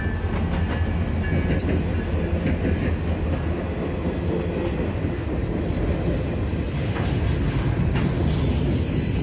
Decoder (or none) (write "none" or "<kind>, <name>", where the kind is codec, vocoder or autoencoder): none